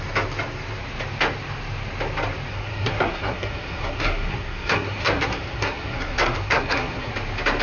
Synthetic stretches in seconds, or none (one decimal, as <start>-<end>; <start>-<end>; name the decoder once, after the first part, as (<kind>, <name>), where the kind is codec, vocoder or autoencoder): 2.5-7.1 (codec, SNAC)